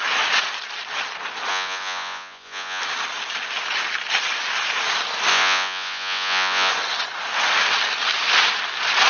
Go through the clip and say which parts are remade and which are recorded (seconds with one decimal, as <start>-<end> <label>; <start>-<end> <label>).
0.0-1.5 recorded; 1.5-2.8 remade; 2.8-5.3 recorded; 5.3-6.7 remade; 6.7-9.1 recorded